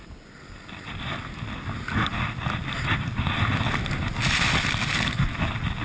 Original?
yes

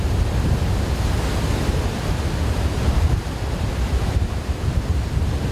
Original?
yes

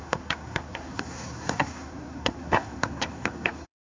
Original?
no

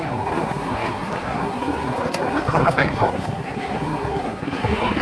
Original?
no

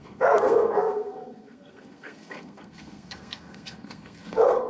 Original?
no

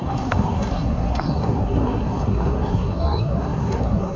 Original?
no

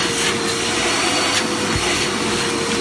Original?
yes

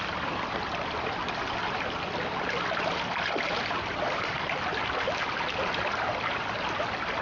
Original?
yes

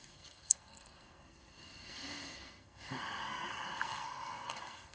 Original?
no